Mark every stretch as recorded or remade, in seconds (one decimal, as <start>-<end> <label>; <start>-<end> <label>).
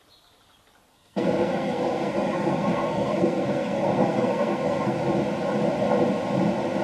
0.0-0.9 recorded; 0.9-5.0 remade; 5.0-6.8 recorded